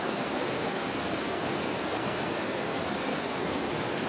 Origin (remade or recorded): remade